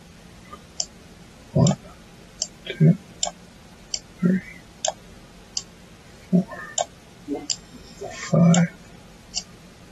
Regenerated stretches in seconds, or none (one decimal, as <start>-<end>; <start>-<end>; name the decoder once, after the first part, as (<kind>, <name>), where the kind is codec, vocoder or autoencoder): 7.5-8.4 (codec, DAC)